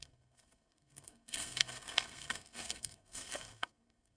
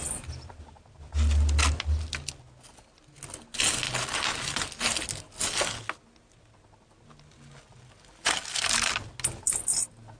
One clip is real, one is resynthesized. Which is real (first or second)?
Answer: second